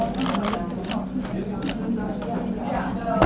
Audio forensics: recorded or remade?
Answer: recorded